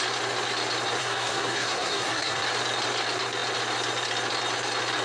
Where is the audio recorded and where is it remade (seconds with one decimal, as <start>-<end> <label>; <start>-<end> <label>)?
0.0-1.0 recorded; 1.0-2.4 remade; 2.4-5.0 recorded